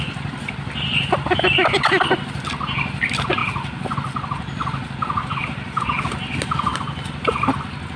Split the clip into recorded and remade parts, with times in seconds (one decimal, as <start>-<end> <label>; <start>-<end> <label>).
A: 0.0-8.0 recorded